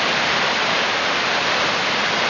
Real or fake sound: fake